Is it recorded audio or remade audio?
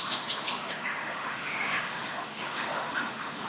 remade